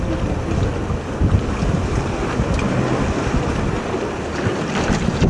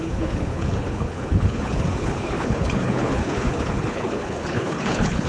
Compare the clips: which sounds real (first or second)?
first